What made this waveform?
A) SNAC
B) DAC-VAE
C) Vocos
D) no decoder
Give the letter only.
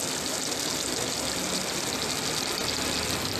D